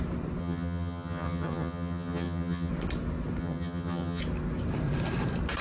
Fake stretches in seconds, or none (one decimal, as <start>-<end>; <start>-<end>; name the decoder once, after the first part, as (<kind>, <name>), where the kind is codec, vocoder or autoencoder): 0.4-2.7 (vocoder, HiFi-GAN); 3.4-4.2